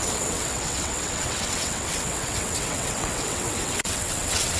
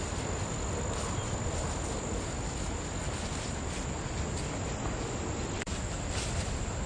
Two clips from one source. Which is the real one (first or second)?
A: second